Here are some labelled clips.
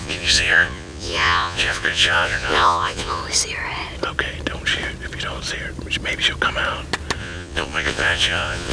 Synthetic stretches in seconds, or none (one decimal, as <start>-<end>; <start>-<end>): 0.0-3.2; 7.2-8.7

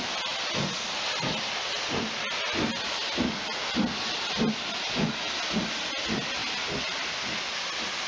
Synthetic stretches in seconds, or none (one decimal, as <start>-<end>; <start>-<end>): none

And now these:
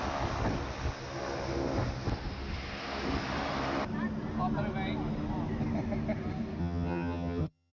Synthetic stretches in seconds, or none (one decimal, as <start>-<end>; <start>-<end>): 6.6-7.7

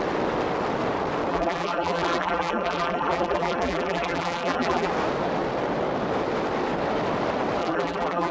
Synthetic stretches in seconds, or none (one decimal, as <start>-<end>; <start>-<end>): 1.3-4.9; 7.6-8.3

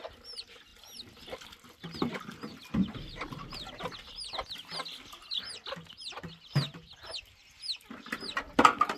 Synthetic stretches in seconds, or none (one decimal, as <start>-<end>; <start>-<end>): none